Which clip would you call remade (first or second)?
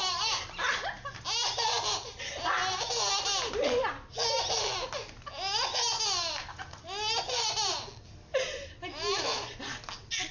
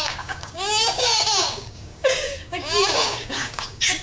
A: second